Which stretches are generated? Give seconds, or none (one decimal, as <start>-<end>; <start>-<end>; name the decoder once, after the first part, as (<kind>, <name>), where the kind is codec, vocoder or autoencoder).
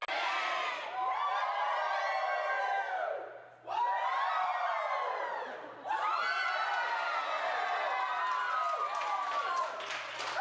none